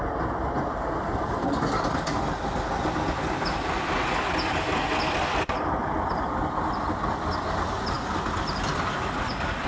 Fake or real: real